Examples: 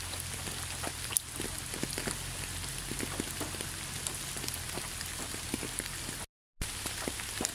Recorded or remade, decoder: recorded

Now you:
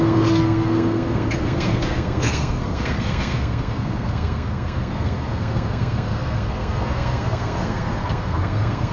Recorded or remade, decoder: remade, codec, SNAC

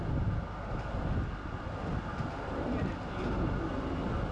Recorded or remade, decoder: recorded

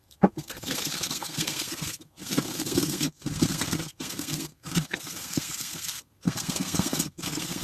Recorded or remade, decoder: remade, codec, SNAC